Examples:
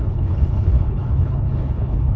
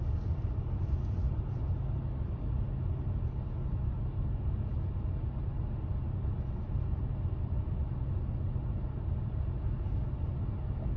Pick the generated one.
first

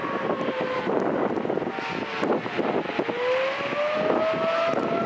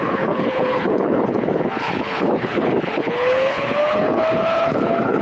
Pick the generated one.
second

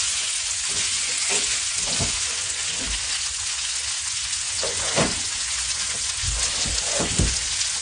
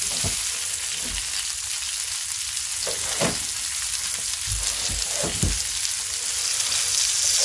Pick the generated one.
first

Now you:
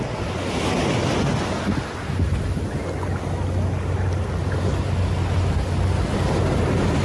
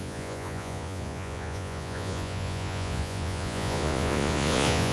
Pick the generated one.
second